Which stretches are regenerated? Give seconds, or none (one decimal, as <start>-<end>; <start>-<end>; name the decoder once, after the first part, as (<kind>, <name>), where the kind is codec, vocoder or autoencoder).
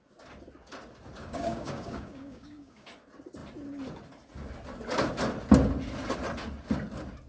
1.2-2.9 (codec, DAC)